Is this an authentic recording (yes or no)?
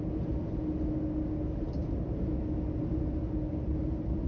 yes